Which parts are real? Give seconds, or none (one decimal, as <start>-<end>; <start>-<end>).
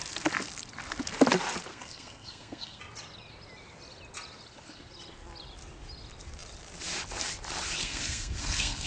0.0-1.7; 2.8-7.8